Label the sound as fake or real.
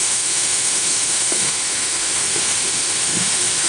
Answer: fake